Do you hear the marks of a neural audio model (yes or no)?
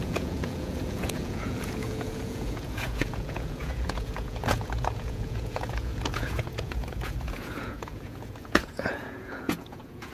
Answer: yes